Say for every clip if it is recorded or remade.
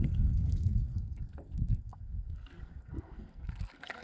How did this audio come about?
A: remade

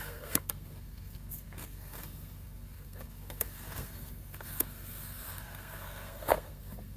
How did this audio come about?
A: remade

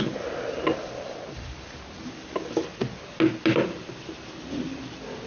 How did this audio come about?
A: recorded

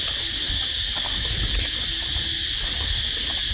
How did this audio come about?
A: recorded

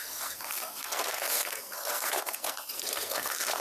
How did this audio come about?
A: remade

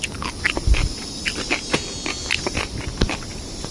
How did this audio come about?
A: recorded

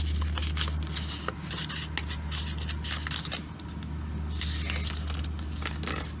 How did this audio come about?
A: recorded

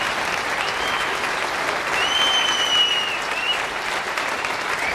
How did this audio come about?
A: recorded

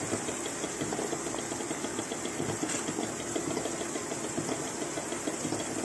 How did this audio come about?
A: recorded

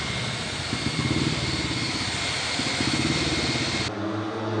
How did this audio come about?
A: recorded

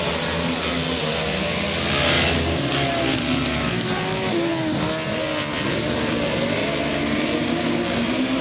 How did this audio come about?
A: recorded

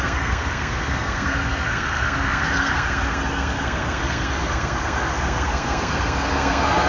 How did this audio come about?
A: remade